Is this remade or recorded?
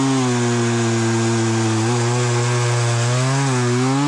recorded